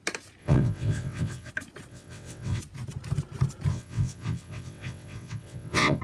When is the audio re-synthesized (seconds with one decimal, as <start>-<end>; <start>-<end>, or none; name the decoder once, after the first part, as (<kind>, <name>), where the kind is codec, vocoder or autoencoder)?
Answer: 0.4-1.5 (vocoder, WaveNeXt); 1.9-2.6; 3.7-6.0